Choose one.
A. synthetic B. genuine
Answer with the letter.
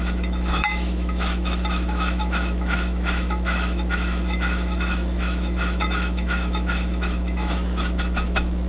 A